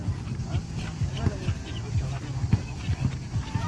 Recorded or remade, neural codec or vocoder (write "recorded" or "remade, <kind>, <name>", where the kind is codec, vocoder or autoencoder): recorded